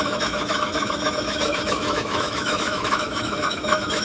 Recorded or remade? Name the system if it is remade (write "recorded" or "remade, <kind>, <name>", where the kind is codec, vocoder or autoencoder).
remade, autoencoder, DAC-VAE